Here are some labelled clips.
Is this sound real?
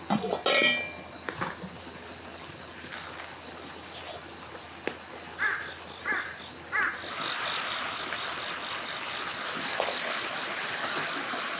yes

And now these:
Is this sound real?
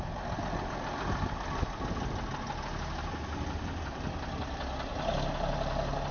yes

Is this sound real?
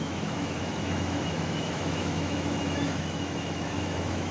no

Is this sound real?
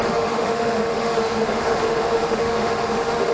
no